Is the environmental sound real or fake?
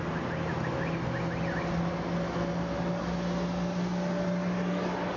real